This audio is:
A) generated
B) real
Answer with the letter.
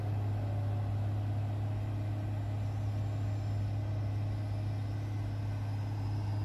B